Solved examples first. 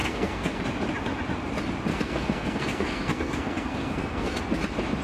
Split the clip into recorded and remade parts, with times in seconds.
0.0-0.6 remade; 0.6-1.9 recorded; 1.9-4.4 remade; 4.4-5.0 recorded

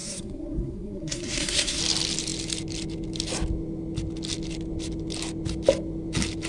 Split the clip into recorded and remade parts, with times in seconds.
0.0-1.8 remade; 1.8-6.5 recorded

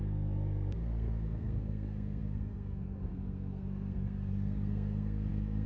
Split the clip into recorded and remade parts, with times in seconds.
0.0-5.7 remade

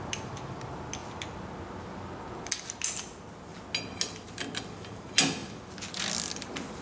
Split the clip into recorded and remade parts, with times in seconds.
0.0-6.8 recorded

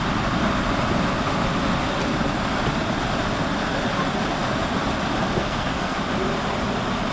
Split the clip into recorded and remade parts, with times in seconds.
0.0-5.4 recorded; 5.4-6.0 remade; 6.0-7.1 recorded